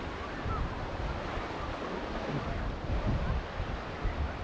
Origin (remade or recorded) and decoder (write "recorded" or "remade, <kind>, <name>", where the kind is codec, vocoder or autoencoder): recorded